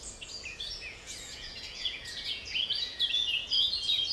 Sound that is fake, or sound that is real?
fake